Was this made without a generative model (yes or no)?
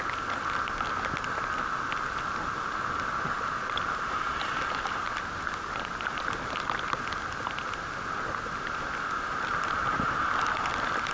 yes